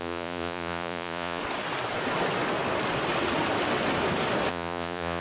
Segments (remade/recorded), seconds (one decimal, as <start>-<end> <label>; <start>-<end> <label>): 0.0-1.4 remade; 1.4-4.5 recorded; 4.5-5.2 remade